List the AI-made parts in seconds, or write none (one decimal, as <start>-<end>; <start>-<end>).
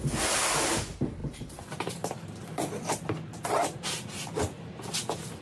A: 1.2-4.4